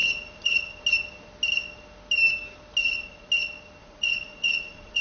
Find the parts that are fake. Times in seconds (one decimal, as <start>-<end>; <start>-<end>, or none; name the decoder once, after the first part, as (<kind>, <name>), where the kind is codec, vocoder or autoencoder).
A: 0.0-0.8 (vocoder, Vocos); 2.8-3.3; 3.8-5.0